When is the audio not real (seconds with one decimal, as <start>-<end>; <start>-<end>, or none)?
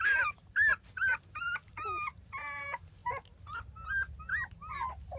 0.0-0.7; 1.2-3.0